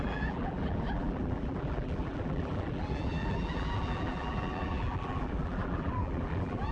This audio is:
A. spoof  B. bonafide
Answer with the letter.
A